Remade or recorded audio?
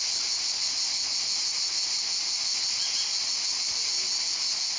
recorded